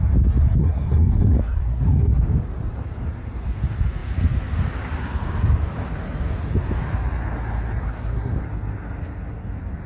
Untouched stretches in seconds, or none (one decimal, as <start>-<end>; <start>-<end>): 0.0-0.6; 2.2-7.8; 8.4-9.9